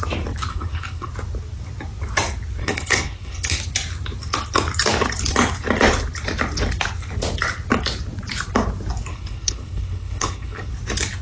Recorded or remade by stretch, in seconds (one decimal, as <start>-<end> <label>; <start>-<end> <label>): 0.0-0.5 recorded; 0.5-1.1 remade; 1.1-2.6 recorded; 2.6-3.6 remade; 3.6-9.1 recorded; 9.1-10.7 remade; 10.7-11.2 recorded